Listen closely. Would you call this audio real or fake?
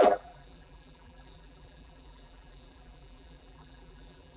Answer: fake